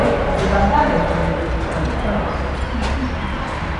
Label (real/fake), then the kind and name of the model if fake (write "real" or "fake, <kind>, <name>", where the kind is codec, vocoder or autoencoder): real